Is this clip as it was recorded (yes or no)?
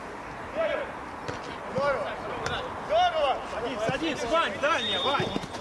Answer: yes